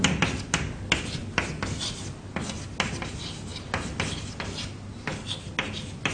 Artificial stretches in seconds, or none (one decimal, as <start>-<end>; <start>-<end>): none